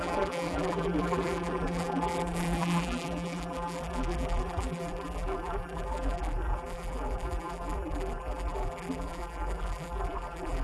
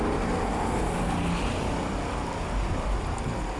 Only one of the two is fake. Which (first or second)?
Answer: first